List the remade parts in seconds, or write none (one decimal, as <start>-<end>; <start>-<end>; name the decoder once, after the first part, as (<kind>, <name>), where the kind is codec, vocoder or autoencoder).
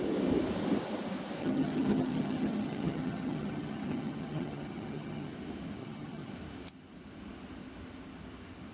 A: 1.4-5.3 (vocoder, HiFi-GAN); 5.8-6.3